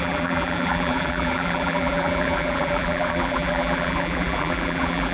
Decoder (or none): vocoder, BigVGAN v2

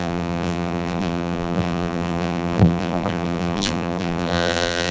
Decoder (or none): vocoder, BigVGAN v2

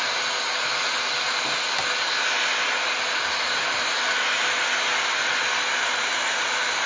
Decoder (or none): none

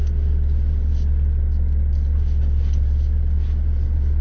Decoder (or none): none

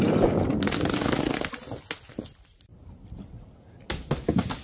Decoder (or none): none